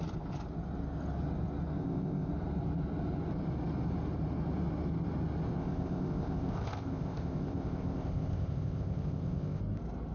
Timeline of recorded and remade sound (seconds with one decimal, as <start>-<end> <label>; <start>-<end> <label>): 0.0-1.8 recorded; 1.8-2.3 remade; 2.3-5.6 recorded; 5.6-9.6 remade; 9.6-10.1 recorded